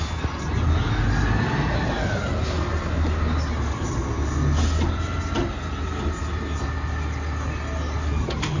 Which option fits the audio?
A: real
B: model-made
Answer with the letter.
A